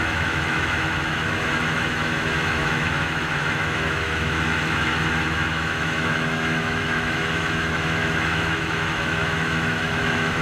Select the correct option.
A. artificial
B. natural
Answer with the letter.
A